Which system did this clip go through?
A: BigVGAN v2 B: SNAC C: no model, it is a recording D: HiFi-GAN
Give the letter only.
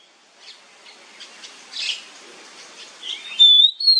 C